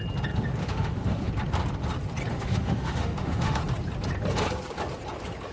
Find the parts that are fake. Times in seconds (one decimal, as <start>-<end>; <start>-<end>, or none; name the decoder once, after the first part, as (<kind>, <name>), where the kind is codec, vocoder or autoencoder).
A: 0.6-1.3 (autoencoder, DAC-VAE); 2.3-3.6